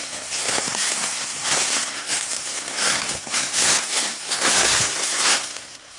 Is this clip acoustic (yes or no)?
no